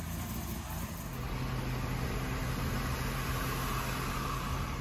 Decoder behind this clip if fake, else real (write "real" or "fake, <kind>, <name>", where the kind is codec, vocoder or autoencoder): real